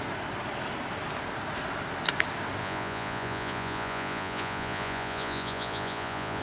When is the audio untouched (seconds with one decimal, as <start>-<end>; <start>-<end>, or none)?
0.0-2.6